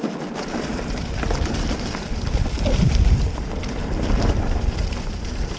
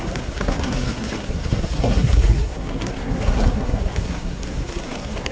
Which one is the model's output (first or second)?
second